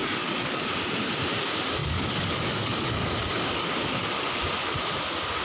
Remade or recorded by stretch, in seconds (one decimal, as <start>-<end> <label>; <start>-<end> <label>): 0.0-0.7 remade; 0.7-1.8 recorded; 1.8-4.1 remade; 4.1-5.4 recorded